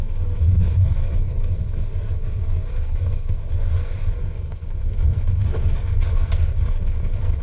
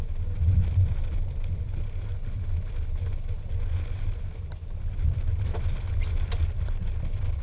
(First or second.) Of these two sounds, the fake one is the first